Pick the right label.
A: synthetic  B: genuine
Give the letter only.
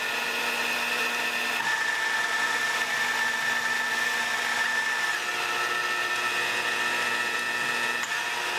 B